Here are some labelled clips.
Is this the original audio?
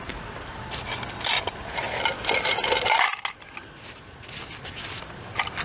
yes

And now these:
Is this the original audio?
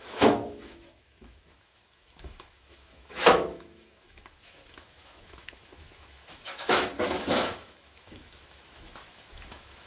no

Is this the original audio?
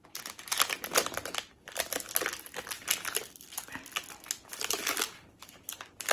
yes